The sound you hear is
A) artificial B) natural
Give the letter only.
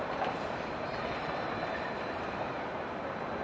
A